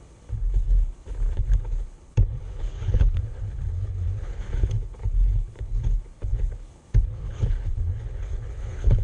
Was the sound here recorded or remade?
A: remade